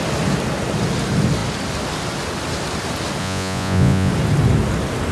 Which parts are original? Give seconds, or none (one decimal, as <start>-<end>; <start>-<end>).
0.0-3.2; 4.1-5.1